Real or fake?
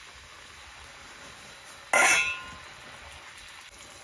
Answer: real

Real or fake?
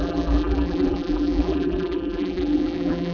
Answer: fake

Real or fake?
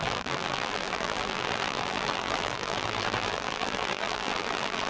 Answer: fake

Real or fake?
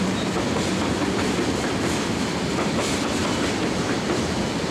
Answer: fake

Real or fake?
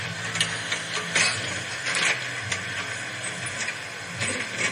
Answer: real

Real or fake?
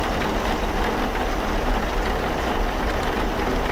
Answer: real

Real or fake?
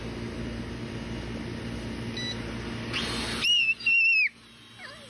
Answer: real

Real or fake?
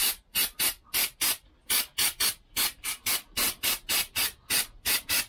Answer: real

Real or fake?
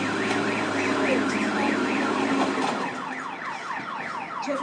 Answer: fake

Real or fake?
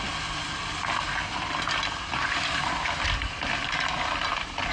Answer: real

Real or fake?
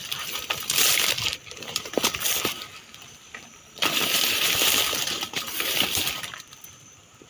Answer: fake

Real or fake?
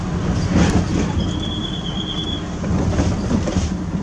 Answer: fake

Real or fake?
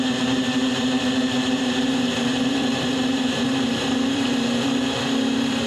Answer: fake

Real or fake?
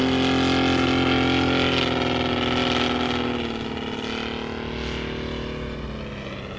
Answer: real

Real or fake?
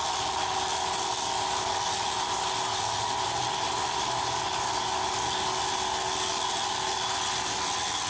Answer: real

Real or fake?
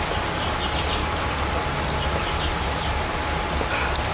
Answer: real